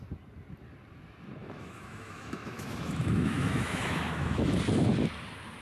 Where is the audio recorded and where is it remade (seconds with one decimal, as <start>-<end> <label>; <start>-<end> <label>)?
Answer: 0.0-1.4 recorded; 1.4-4.6 remade; 4.6-5.6 recorded